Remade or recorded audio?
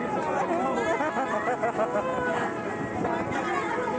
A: recorded